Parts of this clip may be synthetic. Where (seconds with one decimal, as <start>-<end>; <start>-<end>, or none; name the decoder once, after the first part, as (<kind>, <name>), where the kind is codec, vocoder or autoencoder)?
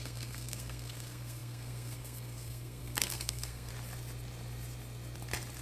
0.0-3.7 (codec, SNAC)